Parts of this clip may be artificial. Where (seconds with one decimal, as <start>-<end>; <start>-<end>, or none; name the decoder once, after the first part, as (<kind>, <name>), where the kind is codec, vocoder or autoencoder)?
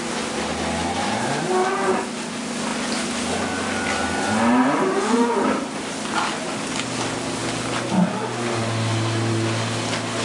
none